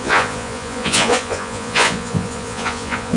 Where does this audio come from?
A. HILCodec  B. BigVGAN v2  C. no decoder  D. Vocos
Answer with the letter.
D